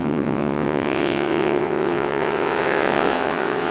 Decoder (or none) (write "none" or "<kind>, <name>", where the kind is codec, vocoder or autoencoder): vocoder, WaveNeXt